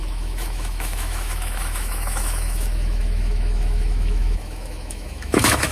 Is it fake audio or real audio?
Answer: fake